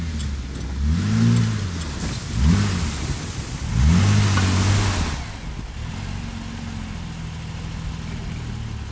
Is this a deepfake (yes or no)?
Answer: no